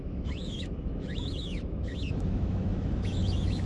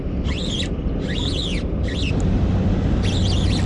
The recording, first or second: second